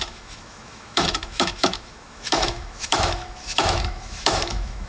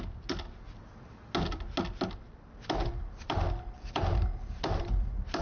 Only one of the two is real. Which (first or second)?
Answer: second